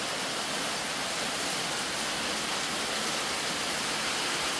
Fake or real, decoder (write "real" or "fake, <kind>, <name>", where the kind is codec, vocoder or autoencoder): real